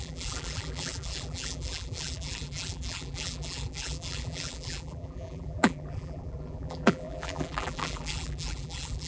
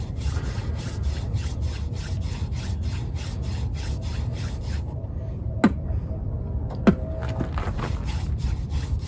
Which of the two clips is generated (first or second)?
first